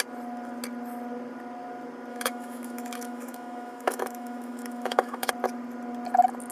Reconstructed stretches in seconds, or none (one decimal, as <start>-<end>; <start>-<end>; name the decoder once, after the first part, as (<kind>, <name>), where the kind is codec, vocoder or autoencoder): 2.1-5.3 (autoencoder, DAC-VAE)